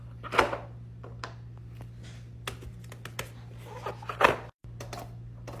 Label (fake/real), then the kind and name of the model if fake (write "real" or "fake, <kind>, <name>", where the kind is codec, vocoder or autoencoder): real